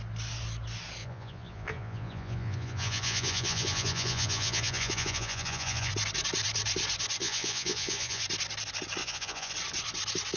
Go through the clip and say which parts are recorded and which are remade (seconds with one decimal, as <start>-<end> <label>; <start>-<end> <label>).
0.0-1.0 recorded; 1.0-5.9 remade; 5.9-7.2 recorded; 7.2-8.2 remade; 8.2-9.0 recorded; 9.0-9.5 remade; 9.5-10.4 recorded